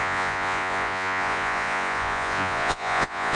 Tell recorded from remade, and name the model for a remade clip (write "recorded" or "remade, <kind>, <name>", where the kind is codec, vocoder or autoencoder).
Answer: remade, vocoder, Vocos